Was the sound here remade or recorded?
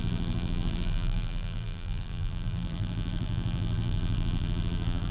remade